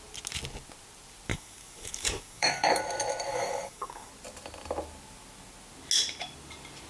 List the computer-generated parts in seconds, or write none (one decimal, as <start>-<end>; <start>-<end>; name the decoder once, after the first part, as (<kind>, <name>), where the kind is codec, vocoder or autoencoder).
1.3-2.8 (codec, DAC); 3.3-4.1